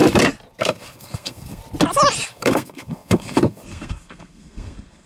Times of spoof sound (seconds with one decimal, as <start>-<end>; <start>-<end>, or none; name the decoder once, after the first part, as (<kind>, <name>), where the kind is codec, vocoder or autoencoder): 0.6-1.6 (codec, SNAC); 2.3-5.1